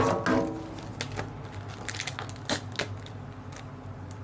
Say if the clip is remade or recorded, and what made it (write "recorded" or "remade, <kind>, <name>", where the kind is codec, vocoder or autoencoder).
recorded